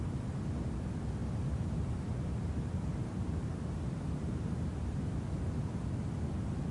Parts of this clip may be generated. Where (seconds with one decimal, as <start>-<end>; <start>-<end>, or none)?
1.2-4.6